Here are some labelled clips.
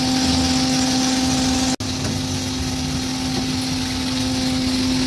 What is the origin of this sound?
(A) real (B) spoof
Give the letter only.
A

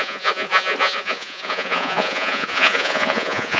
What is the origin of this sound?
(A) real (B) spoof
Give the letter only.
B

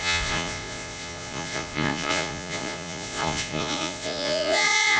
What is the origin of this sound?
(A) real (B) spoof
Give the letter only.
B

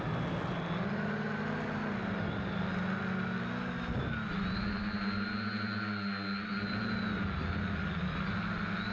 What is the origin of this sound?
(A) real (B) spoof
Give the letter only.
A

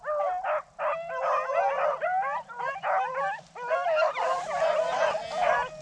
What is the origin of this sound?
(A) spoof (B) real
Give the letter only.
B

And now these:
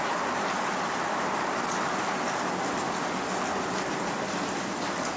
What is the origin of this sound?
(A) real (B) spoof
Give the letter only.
A